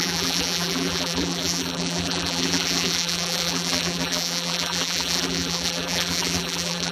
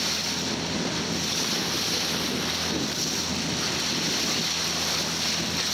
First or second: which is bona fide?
second